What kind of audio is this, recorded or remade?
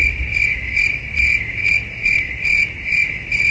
recorded